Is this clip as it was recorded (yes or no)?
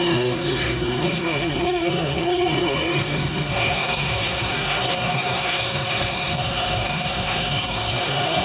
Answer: no